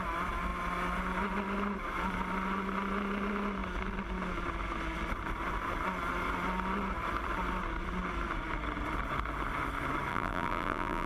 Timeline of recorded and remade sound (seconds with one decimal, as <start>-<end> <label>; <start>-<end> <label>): 0.0-10.1 recorded; 10.1-11.1 remade